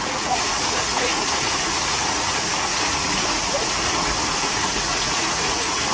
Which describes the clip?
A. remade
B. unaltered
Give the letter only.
A